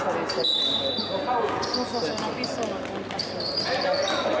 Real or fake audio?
real